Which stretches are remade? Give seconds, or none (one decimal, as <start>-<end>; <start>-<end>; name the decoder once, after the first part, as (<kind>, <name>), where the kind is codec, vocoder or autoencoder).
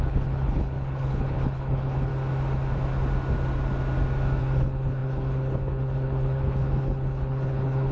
0.0-2.1 (codec, HILCodec); 4.4-7.9